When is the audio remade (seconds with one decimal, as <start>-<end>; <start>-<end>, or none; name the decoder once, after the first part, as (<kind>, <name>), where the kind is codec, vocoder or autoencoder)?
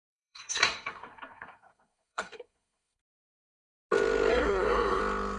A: 0.0-3.2 (codec, SNAC); 4.3-5.0